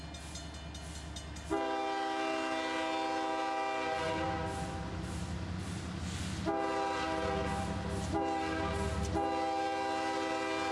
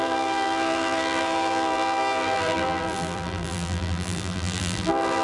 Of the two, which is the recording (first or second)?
first